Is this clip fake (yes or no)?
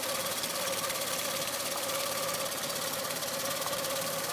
no